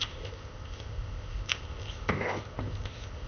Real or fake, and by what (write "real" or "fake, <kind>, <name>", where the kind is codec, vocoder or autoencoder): fake, codec, ZipCodec